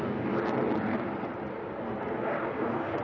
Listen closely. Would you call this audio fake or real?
real